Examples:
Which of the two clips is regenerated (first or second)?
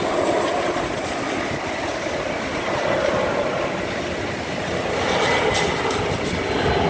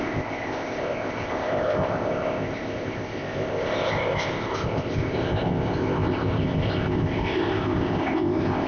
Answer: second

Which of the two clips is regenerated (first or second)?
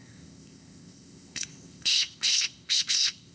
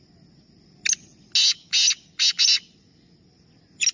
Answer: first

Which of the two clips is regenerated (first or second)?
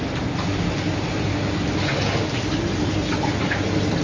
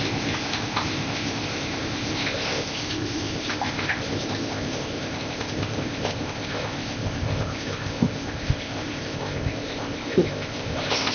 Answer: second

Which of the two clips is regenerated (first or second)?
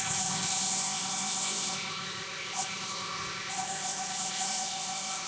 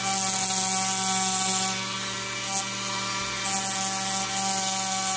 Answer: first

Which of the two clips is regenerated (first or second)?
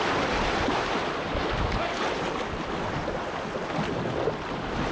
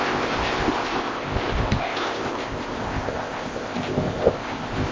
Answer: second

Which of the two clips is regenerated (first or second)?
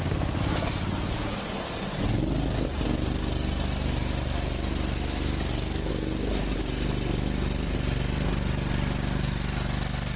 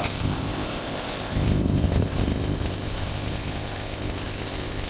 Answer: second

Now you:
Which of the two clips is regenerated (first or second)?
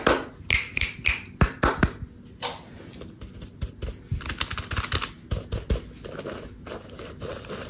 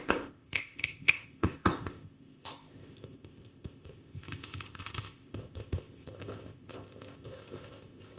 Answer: second